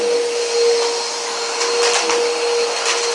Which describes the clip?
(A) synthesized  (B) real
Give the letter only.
B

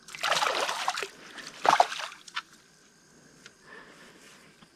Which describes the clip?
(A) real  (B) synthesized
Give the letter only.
B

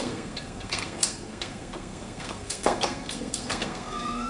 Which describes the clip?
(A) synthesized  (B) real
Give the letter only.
A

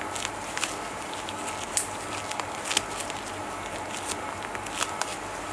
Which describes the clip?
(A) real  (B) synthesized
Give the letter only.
A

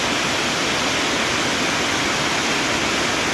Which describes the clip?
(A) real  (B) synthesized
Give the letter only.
A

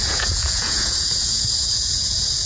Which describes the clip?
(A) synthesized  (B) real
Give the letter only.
A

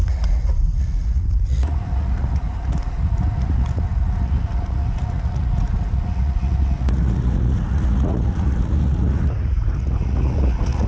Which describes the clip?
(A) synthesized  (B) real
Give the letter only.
A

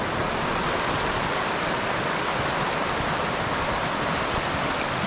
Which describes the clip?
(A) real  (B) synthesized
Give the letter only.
A